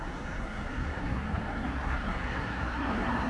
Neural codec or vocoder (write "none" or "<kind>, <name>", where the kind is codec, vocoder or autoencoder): codec, SNAC